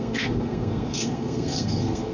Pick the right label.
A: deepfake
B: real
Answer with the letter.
A